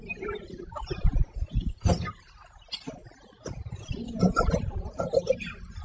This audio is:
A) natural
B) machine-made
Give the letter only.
B